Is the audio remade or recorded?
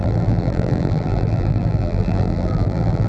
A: remade